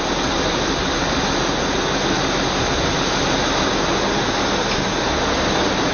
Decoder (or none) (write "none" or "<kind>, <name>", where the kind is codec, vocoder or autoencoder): none